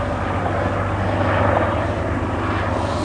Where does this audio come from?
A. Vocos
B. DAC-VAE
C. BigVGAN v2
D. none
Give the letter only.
D